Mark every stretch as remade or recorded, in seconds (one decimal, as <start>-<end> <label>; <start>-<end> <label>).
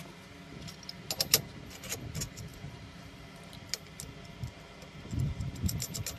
0.0-2.5 recorded; 2.5-3.3 remade; 3.3-6.2 recorded